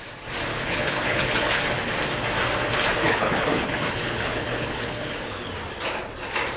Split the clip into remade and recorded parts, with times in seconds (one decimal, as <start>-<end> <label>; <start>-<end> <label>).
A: 0.0-0.5 recorded; 0.5-1.6 remade; 1.6-3.0 recorded; 3.0-5.5 remade; 5.5-6.6 recorded